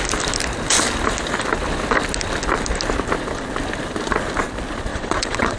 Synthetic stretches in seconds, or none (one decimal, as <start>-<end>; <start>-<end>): 4.9-5.6